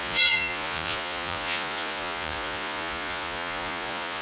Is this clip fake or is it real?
fake